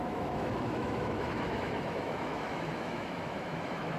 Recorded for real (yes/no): no